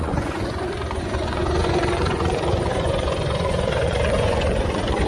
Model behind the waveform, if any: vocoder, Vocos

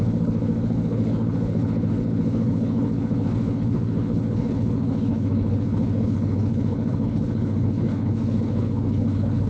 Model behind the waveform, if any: codec, HILCodec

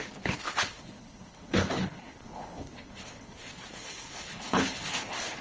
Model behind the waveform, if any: codec, HILCodec